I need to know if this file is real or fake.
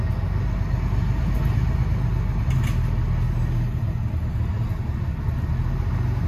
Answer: real